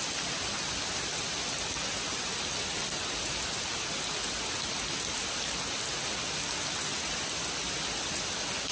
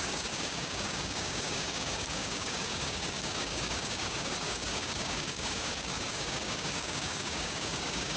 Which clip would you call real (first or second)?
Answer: first